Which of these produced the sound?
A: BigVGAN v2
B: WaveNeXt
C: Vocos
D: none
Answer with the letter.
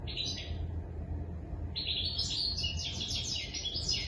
D